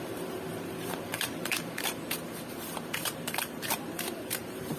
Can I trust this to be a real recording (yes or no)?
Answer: no